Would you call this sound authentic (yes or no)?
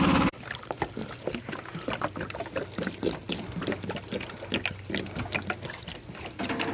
yes